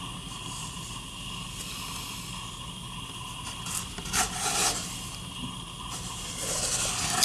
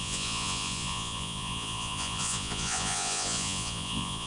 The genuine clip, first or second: first